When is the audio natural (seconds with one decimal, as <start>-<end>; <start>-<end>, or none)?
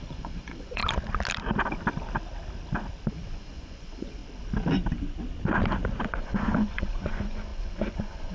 0.8-3.1; 4.2-6.2